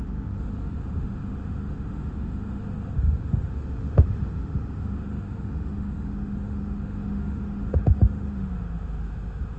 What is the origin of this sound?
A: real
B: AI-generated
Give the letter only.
B